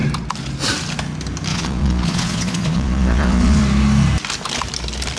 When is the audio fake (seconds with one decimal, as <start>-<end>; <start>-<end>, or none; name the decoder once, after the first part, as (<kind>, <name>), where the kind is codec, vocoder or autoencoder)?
1.5-3.6 (vocoder, Vocos)